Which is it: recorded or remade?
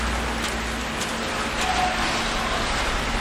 recorded